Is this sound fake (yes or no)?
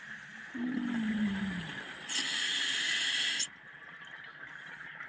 no